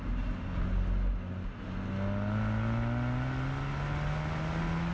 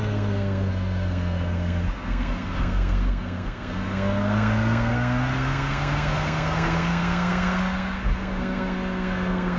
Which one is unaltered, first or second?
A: first